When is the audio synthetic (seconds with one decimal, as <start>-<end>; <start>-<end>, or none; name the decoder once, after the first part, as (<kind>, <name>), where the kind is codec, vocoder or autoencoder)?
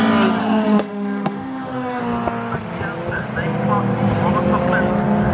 0.4-2.0 (autoencoder, DAC-VAE)